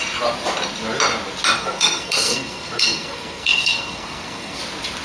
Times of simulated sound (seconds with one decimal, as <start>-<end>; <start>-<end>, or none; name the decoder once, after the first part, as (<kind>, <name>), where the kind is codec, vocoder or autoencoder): 1.6-4.6 (codec, SNAC)